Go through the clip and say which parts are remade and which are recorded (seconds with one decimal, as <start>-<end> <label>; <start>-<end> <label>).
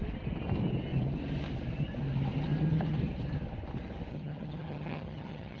0.0-4.1 recorded; 4.1-5.6 remade